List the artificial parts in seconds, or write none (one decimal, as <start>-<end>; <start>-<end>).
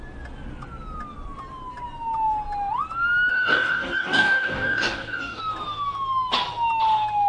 3.3-5.4